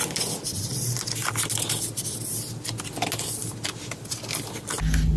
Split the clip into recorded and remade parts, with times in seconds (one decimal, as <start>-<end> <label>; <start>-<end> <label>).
0.0-5.2 recorded